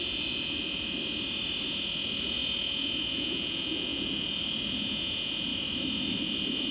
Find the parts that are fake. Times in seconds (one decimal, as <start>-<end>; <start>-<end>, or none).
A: none